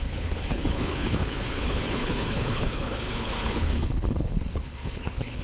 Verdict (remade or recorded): remade